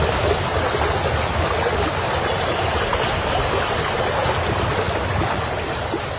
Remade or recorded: recorded